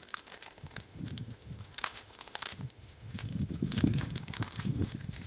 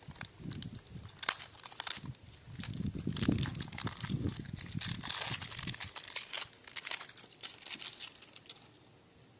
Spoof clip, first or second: first